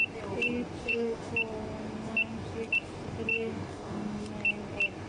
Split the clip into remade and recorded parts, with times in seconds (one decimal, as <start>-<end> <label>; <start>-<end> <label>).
0.0-0.8 recorded; 0.8-1.3 remade; 1.3-3.3 recorded; 3.3-4.3 remade; 4.3-5.1 recorded